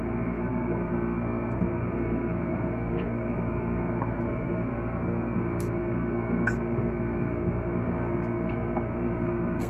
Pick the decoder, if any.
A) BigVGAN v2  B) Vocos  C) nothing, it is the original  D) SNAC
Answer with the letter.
D